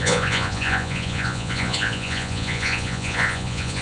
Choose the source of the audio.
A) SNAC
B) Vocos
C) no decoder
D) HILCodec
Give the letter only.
B